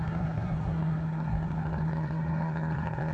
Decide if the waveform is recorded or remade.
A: remade